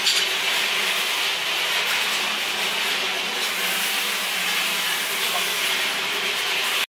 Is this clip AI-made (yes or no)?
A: no